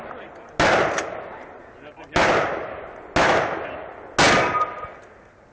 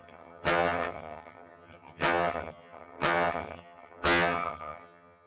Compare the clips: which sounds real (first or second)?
first